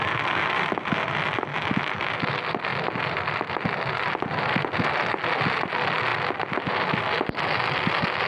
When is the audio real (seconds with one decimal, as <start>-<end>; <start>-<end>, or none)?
0.0-1.5; 2.1-8.3